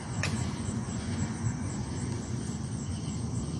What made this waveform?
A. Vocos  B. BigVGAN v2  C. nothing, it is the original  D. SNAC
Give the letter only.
A